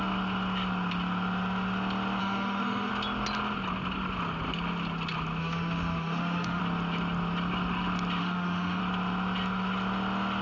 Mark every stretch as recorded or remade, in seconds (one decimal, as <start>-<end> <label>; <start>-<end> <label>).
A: 0.0-2.2 recorded; 2.2-2.9 remade; 2.9-5.4 recorded; 5.4-6.6 remade; 6.6-8.2 recorded; 8.2-8.8 remade; 8.8-10.4 recorded